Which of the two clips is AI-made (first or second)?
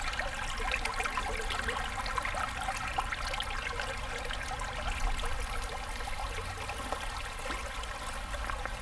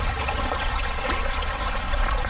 second